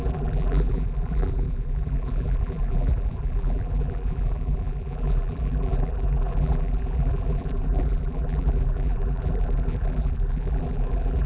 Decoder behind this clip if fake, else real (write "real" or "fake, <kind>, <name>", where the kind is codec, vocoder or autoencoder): fake, vocoder, BigVGAN v2